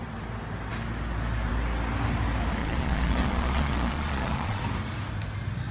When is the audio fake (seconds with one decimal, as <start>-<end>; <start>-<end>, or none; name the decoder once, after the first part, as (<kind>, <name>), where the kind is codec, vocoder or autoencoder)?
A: 2.6-4.6 (vocoder, Vocos)